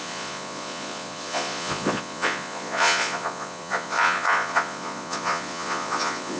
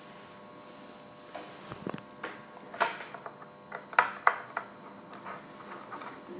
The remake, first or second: first